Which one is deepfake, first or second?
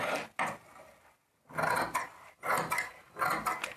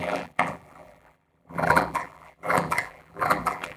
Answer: second